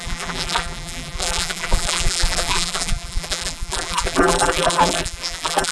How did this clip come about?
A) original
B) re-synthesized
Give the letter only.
B